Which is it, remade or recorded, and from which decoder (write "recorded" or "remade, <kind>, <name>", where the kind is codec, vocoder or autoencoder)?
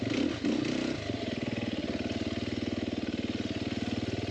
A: recorded